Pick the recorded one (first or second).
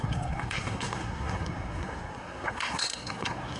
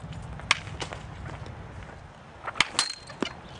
second